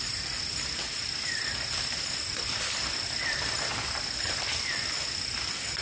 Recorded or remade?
recorded